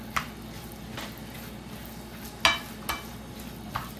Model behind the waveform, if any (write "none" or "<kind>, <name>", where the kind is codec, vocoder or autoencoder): none